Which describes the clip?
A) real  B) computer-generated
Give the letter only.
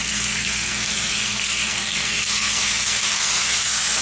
B